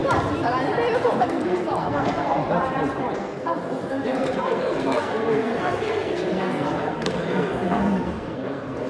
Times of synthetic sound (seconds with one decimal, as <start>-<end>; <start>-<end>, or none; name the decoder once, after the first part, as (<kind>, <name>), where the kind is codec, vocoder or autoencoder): 1.2-2.4 (codec, SNAC); 3.2-8.9